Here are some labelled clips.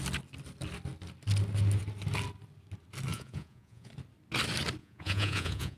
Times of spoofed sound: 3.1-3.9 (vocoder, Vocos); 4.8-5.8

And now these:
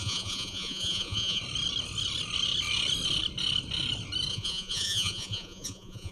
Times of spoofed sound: 0.0-1.4 (vocoder, Vocos); 4.3-6.1

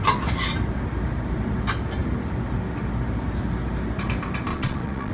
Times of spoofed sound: 4.5-5.1 (vocoder, Vocos)

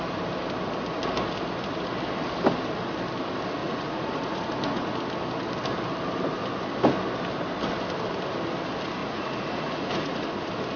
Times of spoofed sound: 3.6-4.9 (vocoder, Vocos); 9.0-10.3

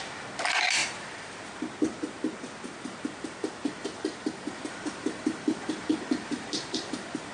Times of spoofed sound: none

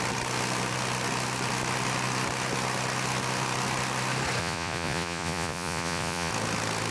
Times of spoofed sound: 4.4-6.3 (vocoder, Vocos)

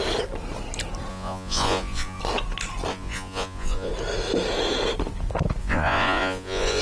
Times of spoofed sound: 1.1-2.2 (vocoder, Vocos); 2.9-3.9; 5.6-6.8

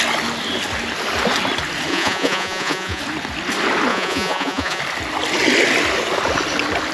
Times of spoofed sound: 1.9-3.0 (vocoder, Vocos); 3.9-4.8